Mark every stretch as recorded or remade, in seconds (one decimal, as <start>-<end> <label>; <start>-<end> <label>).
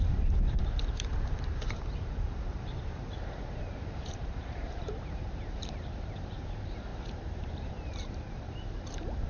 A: 0.0-9.3 remade